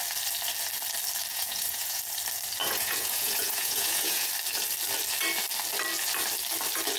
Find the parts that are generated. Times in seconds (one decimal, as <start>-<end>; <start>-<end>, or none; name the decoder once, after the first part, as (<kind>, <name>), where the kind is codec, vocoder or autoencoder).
1.3-2.0 (vocoder, Vocos); 2.6-4.3